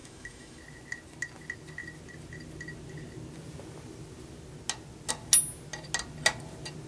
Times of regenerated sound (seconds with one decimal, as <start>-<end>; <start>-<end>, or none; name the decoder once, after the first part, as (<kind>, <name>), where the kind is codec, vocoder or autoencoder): 0.0-0.6 (autoencoder, DAC-VAE)